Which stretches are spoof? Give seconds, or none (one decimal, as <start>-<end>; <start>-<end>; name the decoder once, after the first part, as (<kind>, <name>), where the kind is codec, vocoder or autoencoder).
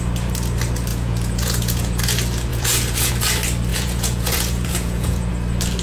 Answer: 0.9-2.0 (vocoder, Vocos); 2.5-3.1; 3.7-5.3